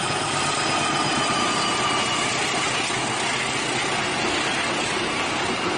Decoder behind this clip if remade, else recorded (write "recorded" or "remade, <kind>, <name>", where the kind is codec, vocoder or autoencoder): recorded